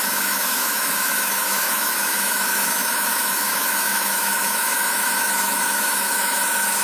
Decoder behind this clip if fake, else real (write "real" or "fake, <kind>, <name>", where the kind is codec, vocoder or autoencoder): fake, autoencoder, DAC-VAE